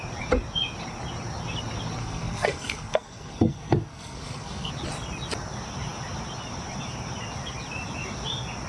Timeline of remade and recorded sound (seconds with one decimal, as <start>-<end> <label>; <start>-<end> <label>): 0.0-2.0 recorded; 2.0-4.7 remade; 4.7-8.7 recorded

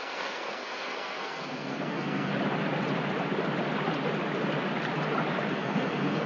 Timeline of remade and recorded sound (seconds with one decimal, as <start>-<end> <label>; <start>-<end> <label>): 0.0-2.3 remade; 2.3-5.5 recorded; 5.5-6.3 remade

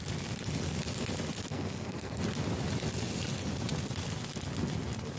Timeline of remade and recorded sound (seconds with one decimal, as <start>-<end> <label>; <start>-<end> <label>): 0.0-1.5 recorded; 1.5-2.2 remade; 2.2-5.2 recorded

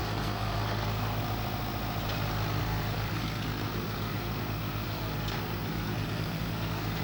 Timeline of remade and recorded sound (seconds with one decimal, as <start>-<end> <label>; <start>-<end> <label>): 0.0-1.2 remade; 1.2-2.6 recorded; 2.6-7.0 remade

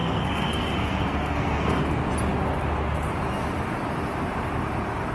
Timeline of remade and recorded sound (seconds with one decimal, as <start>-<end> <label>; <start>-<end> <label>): 0.0-1.8 remade; 1.8-5.1 recorded